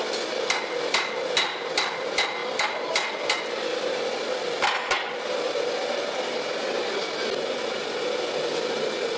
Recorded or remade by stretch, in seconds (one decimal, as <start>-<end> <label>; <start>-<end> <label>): 0.0-9.2 recorded